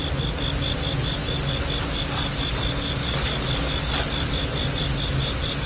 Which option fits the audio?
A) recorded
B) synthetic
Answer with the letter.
A